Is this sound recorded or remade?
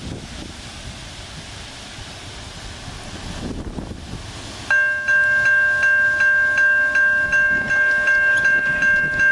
recorded